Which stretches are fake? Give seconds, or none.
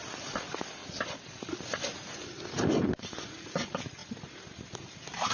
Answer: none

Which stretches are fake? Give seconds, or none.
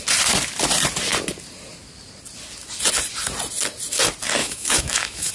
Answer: 4.4-5.3 (autoencoder, DAC-VAE)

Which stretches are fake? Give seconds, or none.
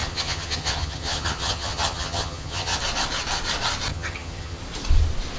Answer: 0.0-2.8 (vocoder, HiFi-GAN); 3.9-4.6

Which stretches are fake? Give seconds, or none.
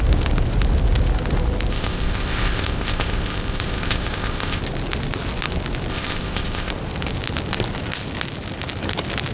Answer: 1.7-4.6 (codec, ZipCodec); 5.9-6.7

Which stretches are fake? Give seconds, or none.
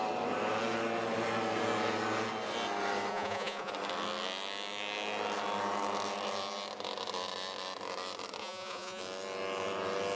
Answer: 3.1-3.7 (vocoder, Vocos); 8.4-9.0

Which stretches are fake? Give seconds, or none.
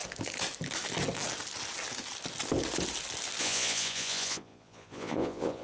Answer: 3.4-5.6 (vocoder, Vocos)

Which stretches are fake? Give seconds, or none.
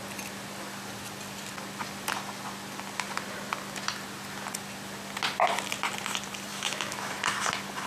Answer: 6.5-7.1 (autoencoder, DAC-VAE)